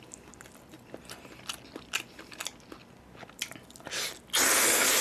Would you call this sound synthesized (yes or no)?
no